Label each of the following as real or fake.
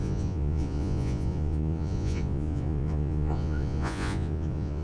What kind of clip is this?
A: fake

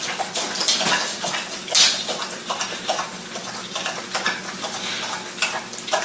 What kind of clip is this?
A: real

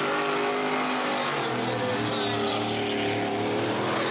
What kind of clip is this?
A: real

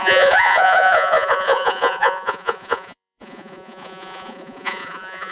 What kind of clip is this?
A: fake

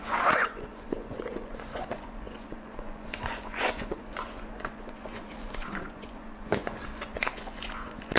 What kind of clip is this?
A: fake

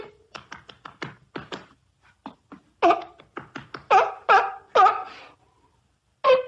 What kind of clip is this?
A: real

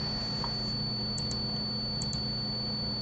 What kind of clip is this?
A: real